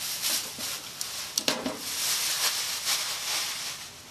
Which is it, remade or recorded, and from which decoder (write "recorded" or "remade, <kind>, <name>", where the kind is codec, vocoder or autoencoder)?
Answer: recorded